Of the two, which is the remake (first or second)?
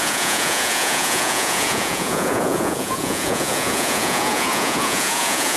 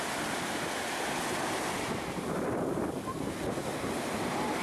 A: first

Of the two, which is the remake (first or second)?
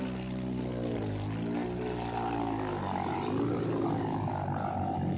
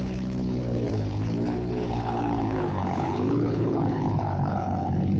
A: second